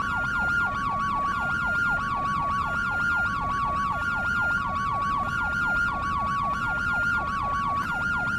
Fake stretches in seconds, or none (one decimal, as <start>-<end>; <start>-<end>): none